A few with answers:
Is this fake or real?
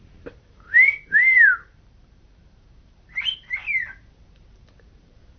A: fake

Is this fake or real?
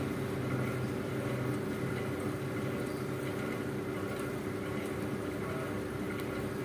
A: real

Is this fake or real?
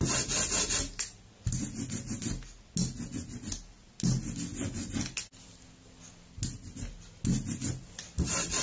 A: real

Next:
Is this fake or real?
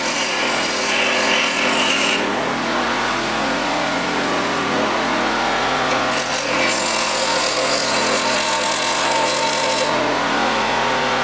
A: fake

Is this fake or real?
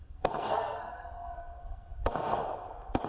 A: fake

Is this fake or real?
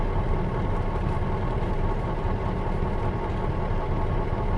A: fake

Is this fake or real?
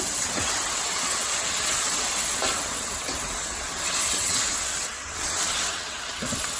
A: fake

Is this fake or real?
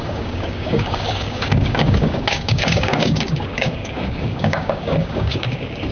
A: fake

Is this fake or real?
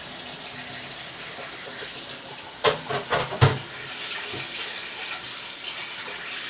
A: real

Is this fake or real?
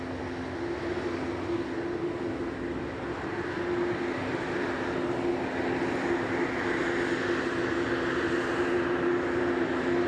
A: real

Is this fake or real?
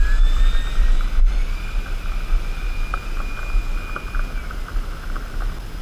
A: real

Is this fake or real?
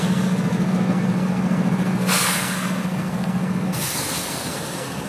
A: fake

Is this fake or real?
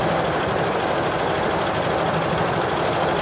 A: real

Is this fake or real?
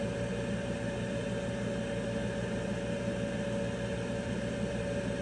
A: real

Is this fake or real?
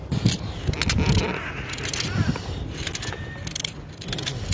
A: real